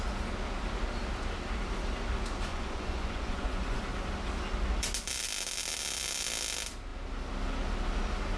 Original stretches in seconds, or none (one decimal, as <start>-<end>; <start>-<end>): 0.0-2.5; 3.8-8.4